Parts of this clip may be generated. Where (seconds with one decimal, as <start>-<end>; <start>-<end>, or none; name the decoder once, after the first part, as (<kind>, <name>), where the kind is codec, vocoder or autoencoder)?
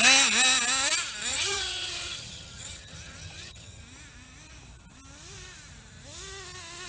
1.3-3.8 (vocoder, HiFi-GAN)